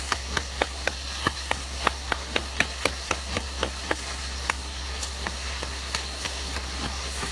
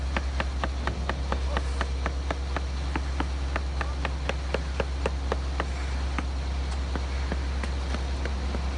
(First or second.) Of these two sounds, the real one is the second